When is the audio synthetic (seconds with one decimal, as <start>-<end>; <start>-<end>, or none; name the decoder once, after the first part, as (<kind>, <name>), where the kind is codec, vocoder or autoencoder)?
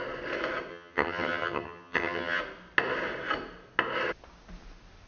0.7-2.4 (vocoder, HiFi-GAN)